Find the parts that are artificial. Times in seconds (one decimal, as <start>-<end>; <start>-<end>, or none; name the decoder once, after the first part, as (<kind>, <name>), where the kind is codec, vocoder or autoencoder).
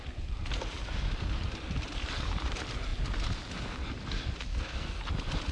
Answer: 4.5-5.0 (codec, SNAC)